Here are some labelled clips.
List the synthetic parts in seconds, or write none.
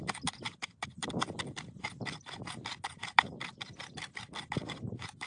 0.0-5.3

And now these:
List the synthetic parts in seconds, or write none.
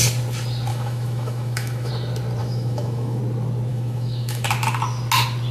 0.7-1.9; 2.4-3.2; 3.7-4.5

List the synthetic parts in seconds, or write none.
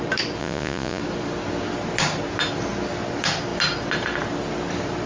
0.4-1.0